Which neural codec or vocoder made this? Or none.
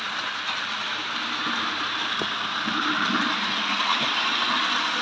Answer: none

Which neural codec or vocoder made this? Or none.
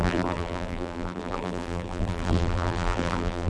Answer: vocoder, BigVGAN v2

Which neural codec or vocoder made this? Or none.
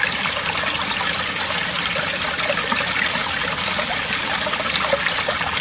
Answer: none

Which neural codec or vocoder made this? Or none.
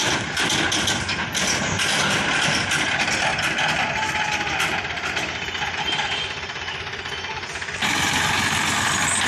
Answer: none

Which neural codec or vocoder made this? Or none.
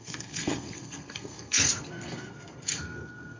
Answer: codec, SNAC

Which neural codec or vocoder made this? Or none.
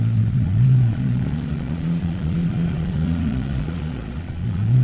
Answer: vocoder, Vocos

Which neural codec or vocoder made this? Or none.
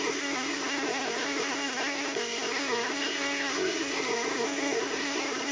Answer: codec, SNAC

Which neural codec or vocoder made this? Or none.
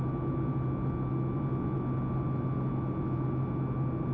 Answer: none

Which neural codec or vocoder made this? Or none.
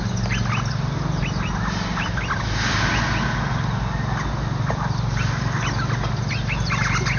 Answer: none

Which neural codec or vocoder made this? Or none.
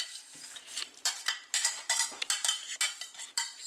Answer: vocoder, BigVGAN v2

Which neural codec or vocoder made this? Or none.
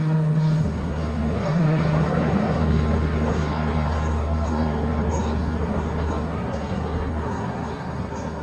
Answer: codec, SNAC